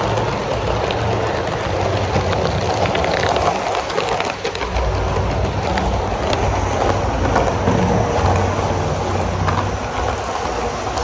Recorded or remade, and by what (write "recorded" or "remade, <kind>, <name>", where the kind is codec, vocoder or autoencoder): recorded